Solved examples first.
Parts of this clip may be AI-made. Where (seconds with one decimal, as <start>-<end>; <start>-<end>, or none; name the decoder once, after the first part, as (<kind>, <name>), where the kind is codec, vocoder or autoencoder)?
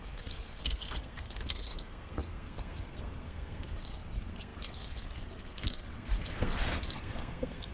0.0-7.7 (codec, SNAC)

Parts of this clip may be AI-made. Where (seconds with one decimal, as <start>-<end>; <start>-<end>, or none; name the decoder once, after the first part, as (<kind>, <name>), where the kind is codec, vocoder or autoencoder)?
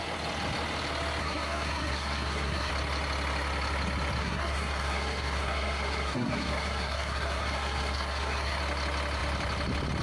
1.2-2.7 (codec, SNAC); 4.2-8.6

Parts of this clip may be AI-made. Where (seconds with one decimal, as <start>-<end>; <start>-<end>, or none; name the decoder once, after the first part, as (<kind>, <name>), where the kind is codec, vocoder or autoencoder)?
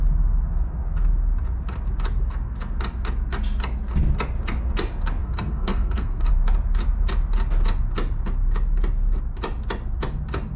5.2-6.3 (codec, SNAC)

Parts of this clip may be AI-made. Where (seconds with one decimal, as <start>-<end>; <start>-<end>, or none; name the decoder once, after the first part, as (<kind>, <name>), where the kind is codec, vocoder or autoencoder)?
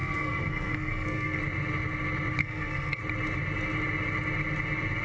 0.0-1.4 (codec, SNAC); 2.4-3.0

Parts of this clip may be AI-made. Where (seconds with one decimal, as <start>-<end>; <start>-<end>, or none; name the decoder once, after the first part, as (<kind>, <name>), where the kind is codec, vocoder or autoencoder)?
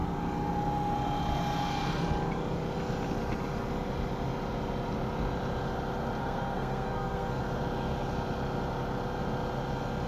6.2-7.4 (codec, SNAC)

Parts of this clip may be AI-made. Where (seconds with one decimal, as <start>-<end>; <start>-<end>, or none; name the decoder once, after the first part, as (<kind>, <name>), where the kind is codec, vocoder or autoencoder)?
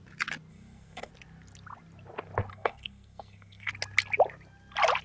0.5-1.1 (codec, SNAC); 2.5-3.7